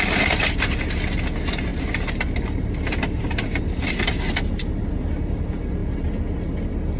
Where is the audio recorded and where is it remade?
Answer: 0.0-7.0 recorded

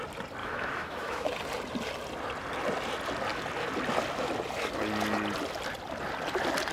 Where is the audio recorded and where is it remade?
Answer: 0.0-0.4 recorded; 0.4-1.3 remade; 1.3-6.7 recorded

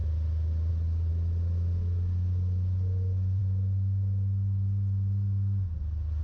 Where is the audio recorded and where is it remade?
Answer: 0.0-6.2 recorded

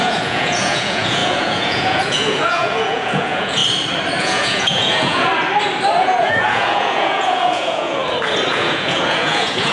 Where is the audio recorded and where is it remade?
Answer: 0.0-3.6 remade; 3.6-4.2 recorded; 4.2-5.3 remade; 5.3-6.0 recorded; 6.0-8.0 remade; 8.0-8.5 recorded; 8.5-9.7 remade

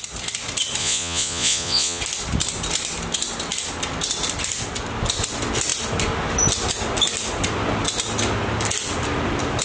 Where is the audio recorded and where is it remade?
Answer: 0.0-0.8 recorded; 0.8-2.0 remade; 2.0-9.6 recorded

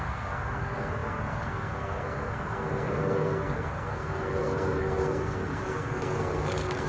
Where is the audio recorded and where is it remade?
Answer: 0.0-6.9 remade

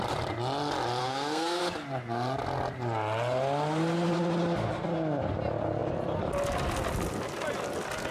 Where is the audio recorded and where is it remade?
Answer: 0.0-1.0 recorded; 1.0-1.6 remade; 1.6-8.1 recorded